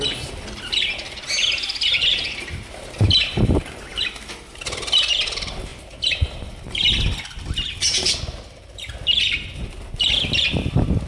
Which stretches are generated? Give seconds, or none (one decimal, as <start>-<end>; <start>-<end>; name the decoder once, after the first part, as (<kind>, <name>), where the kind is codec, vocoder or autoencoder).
3.9-4.5 (vocoder, BigVGAN v2); 5.7-8.2